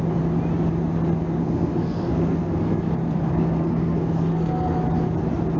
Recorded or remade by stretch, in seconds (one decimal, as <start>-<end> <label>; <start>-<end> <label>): 0.0-1.4 recorded; 1.4-4.8 remade; 4.8-5.6 recorded